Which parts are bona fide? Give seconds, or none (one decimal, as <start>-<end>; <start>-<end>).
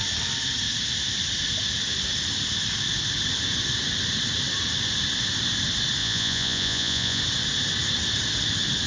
0.0-6.0; 7.2-8.9